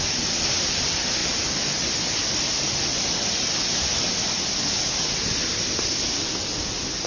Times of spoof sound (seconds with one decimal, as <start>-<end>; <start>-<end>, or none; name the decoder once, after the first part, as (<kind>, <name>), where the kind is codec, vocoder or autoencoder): none